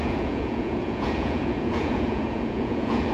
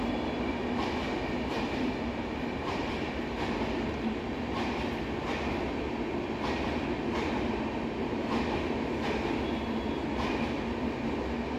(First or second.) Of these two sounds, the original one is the second